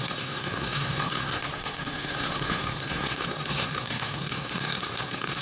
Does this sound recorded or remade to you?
remade